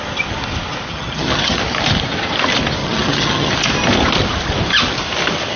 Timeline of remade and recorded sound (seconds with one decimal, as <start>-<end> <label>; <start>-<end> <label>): 0.0-0.9 recorded; 0.9-1.6 remade; 1.6-2.8 recorded; 2.8-3.5 remade; 3.5-5.6 recorded